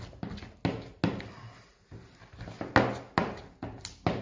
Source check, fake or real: real